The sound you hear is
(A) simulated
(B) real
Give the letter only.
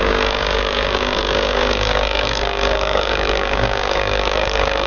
A